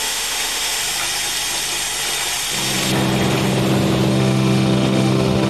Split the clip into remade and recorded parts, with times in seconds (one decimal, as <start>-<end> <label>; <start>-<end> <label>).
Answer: 0.0-0.8 remade; 0.8-4.1 recorded; 4.1-5.5 remade